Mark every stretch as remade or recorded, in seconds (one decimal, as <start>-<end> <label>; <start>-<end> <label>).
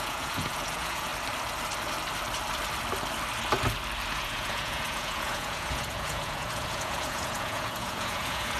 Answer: 0.0-1.1 remade; 1.1-4.1 recorded; 4.1-8.6 remade